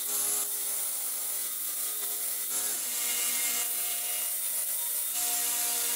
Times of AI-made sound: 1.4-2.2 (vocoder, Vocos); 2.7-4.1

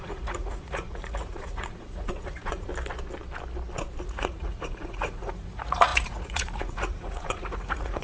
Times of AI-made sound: 0.0-2.7 (vocoder, Vocos); 4.0-8.0

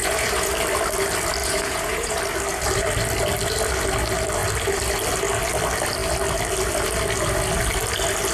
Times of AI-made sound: 0.0-0.5 (vocoder, Vocos); 1.4-2.2

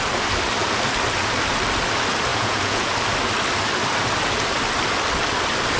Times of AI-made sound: 2.3-2.9 (vocoder, Vocos)